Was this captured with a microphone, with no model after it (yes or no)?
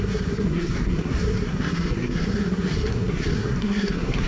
no